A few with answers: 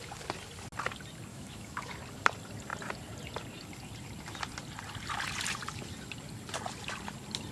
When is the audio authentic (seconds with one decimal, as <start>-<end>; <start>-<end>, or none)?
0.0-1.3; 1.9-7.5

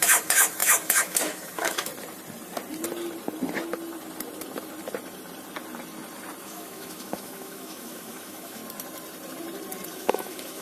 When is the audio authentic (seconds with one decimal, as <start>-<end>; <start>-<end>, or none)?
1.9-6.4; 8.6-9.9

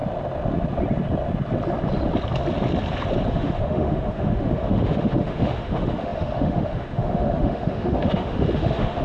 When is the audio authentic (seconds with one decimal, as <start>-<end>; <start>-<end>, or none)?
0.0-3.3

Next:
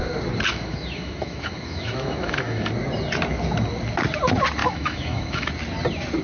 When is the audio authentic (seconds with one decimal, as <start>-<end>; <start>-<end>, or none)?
0.0-0.5; 2.7-4.6; 5.5-6.2